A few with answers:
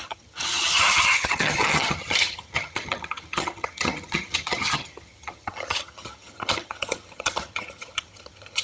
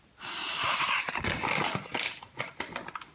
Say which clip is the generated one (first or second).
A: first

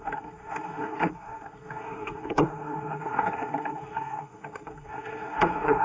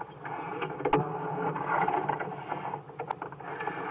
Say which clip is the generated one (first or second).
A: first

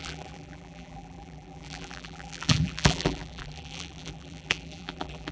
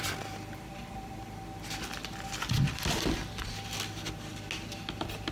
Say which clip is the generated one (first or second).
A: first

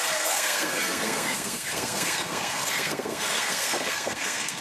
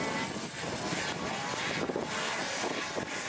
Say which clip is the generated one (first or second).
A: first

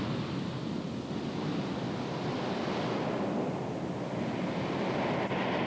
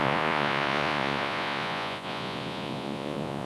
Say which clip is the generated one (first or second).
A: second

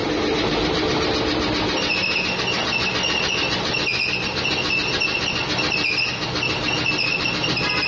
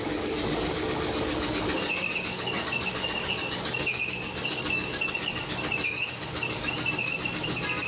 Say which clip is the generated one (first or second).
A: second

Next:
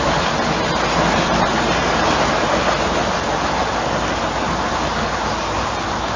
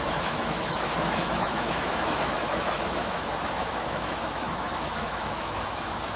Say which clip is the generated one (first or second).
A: second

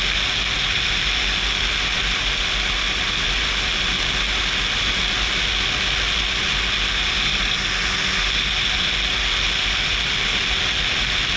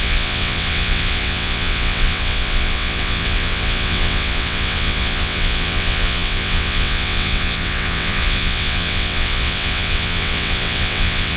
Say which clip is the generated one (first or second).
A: second